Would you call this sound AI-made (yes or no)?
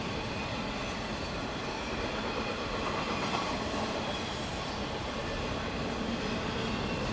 no